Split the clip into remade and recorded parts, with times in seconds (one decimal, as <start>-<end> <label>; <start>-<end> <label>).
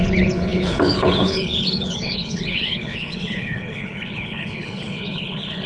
0.0-5.7 remade